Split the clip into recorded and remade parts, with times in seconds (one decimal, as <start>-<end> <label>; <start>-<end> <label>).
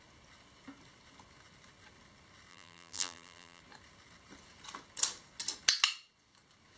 0.0-2.5 recorded; 2.5-3.6 remade; 3.6-6.8 recorded